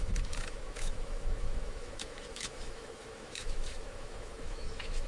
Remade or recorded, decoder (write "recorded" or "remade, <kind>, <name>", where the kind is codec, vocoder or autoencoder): remade, autoencoder, DAC-VAE